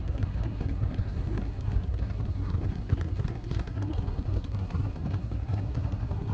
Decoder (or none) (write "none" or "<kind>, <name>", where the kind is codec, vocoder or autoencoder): codec, SNAC